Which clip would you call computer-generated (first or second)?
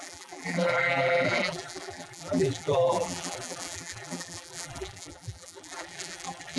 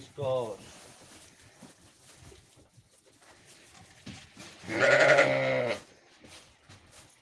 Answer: first